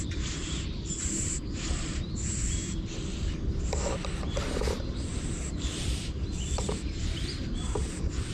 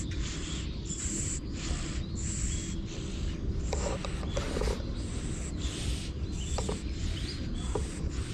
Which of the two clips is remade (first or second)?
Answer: first